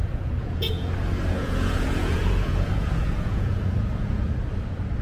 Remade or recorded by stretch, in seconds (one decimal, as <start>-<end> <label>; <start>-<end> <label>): 0.0-0.9 remade; 0.9-1.3 recorded; 1.3-4.3 remade; 4.3-5.0 recorded